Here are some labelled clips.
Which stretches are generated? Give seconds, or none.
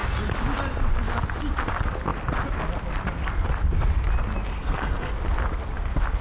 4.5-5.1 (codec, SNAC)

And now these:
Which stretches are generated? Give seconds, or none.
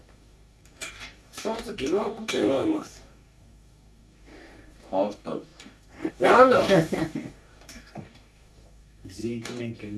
0.0-10.0 (codec, DAC)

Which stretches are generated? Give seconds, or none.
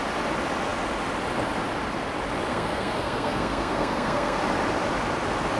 2.5-4.4 (codec, SNAC)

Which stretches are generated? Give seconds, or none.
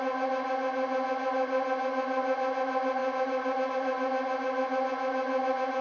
none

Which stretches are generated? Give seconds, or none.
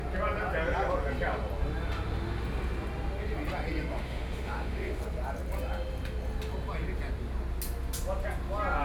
3.9-5.0 (autoencoder, DAC-VAE)